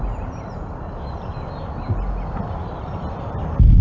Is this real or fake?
real